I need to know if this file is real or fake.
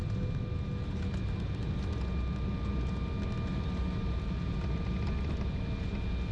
real